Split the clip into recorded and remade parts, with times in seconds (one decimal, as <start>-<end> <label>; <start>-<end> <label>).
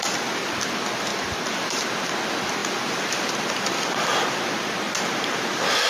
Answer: 0.0-1.1 recorded; 1.1-1.9 remade; 1.9-5.9 recorded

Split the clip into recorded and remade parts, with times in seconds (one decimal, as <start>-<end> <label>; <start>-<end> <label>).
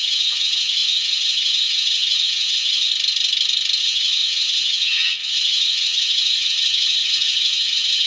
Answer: 0.0-2.9 remade; 2.9-3.8 recorded; 3.8-8.1 remade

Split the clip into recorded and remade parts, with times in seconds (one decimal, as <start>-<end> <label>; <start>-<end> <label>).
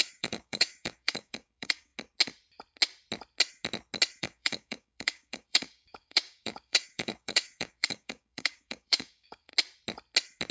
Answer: 0.0-1.9 remade; 1.9-4.2 recorded; 4.2-9.5 remade; 9.5-10.5 recorded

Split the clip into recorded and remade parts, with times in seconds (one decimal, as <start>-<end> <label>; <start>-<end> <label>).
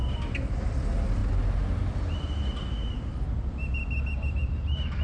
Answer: 0.0-5.0 recorded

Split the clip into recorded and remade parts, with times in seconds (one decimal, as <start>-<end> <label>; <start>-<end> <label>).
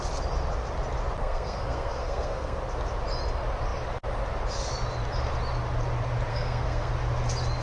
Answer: 0.0-1.2 recorded; 1.2-2.6 remade; 2.6-6.3 recorded; 6.3-6.9 remade; 6.9-7.6 recorded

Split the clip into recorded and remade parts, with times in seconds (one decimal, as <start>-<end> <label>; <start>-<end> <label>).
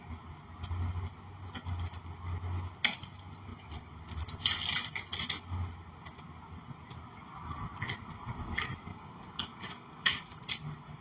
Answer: 0.0-8.9 recorded; 8.9-10.4 remade; 10.4-11.0 recorded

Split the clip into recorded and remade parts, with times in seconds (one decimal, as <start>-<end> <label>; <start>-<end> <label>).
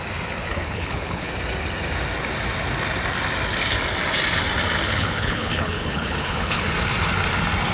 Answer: 0.0-0.5 recorded; 0.5-1.3 remade; 1.3-4.8 recorded; 4.8-6.6 remade; 6.6-7.7 recorded